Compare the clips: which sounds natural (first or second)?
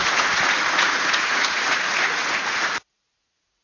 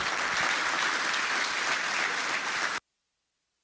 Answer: second